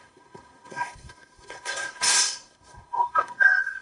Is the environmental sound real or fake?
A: fake